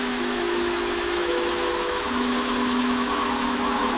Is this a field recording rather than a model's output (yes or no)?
no